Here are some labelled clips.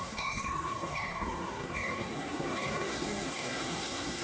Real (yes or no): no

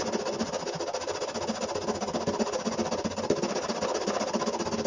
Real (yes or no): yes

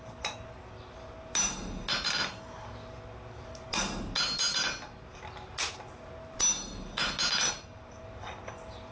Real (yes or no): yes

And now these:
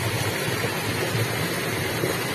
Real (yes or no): yes